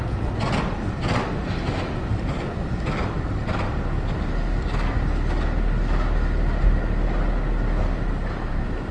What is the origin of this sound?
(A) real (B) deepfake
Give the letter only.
A